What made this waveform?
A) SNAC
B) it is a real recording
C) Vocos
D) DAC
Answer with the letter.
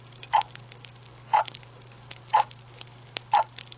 B